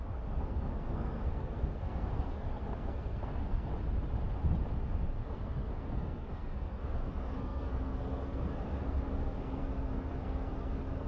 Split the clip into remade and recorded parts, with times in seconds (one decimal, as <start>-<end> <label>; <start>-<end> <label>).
0.0-3.7 remade; 3.7-4.8 recorded; 4.8-11.1 remade